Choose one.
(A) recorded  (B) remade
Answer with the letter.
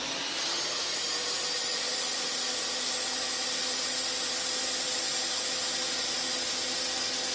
A